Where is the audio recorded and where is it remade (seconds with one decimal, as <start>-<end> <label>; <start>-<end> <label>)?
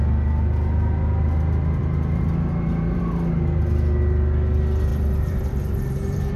0.0-1.8 recorded; 1.8-3.0 remade; 3.0-4.9 recorded; 4.9-6.4 remade